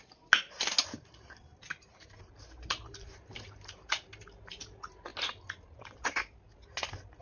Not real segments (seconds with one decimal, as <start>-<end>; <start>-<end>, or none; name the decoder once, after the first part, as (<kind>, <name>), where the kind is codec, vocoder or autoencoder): 1.5-4.0 (vocoder, BigVGAN v2)